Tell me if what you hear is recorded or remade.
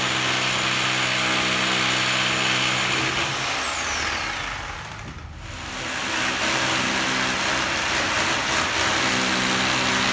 recorded